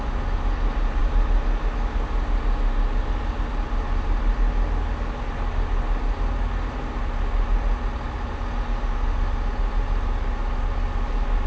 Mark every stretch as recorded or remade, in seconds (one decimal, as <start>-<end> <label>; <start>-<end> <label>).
0.0-11.5 recorded